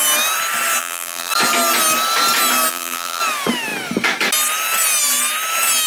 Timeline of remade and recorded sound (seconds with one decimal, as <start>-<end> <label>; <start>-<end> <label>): 0.0-0.8 recorded; 0.8-1.3 remade; 1.3-2.7 recorded; 2.7-3.2 remade; 3.2-5.9 recorded